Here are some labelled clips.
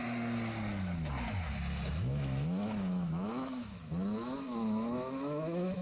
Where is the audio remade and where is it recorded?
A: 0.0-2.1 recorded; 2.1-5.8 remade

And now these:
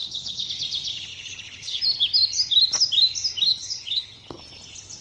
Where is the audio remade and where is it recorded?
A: 0.0-0.5 remade; 0.5-1.1 recorded; 1.1-1.8 remade; 1.8-3.5 recorded; 3.5-4.4 remade; 4.4-5.0 recorded

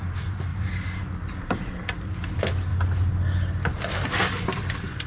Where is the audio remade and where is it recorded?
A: 0.0-2.7 remade; 2.7-4.2 recorded; 4.2-5.1 remade

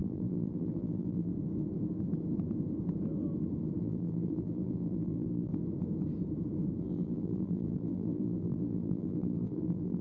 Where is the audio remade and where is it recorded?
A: 0.0-1.3 remade; 1.3-3.8 recorded; 3.8-5.5 remade; 5.5-6.8 recorded; 6.8-10.0 remade

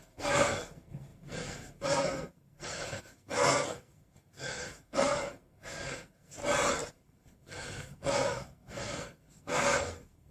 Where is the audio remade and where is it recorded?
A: 0.0-6.4 remade; 6.4-6.9 recorded; 6.9-10.3 remade

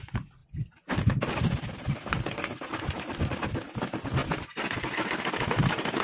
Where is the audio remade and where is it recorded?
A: 0.0-6.0 recorded

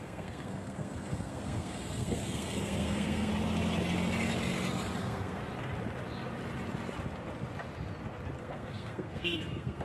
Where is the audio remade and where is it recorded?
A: 0.0-3.3 remade; 3.3-5.0 recorded; 5.0-5.4 remade; 5.4-8.4 recorded; 8.4-9.8 remade

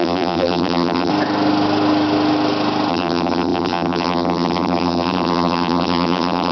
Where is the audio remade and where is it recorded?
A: 0.0-1.1 remade; 1.1-2.9 recorded; 2.9-6.5 remade